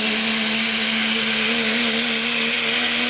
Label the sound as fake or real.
real